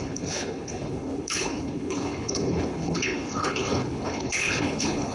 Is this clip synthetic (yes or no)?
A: yes